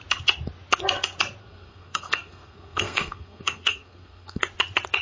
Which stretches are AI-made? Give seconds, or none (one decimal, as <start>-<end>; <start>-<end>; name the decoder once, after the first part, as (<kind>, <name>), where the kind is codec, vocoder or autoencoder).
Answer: 1.4-4.4 (codec, SNAC)